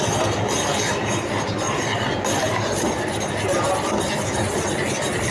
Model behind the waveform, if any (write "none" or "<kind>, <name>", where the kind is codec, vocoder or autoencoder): none